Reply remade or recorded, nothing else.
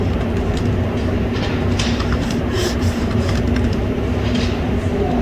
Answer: remade